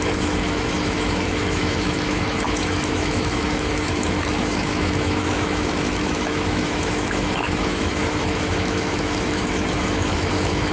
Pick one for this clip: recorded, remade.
remade